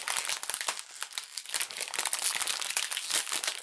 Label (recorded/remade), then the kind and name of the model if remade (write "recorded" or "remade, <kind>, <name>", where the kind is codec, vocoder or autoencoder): recorded